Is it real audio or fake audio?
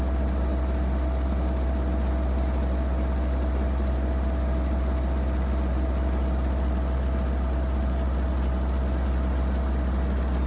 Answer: real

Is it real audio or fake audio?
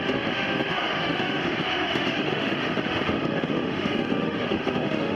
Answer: fake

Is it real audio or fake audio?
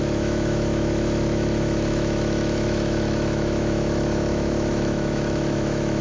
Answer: fake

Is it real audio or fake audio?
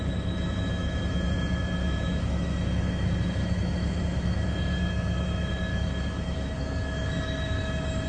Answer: fake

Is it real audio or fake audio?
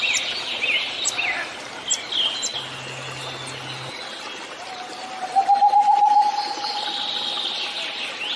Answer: real